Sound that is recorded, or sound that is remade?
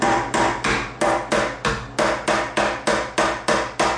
recorded